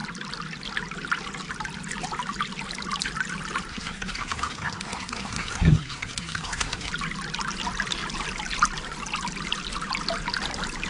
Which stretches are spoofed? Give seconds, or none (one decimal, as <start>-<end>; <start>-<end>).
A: 3.7-6.9